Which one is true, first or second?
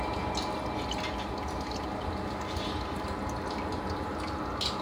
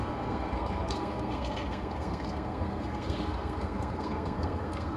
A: first